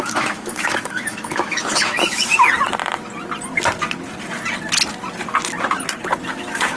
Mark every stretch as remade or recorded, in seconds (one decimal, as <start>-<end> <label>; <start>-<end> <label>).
0.0-2.3 remade; 2.3-6.3 recorded; 6.3-6.8 remade